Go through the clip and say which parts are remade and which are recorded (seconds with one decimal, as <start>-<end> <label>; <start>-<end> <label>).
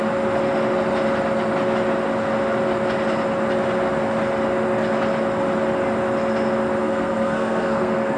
0.0-6.8 recorded; 6.8-8.2 remade